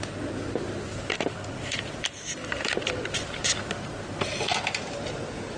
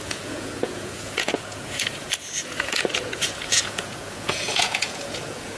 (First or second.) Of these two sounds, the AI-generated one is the second